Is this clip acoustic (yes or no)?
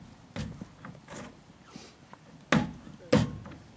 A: yes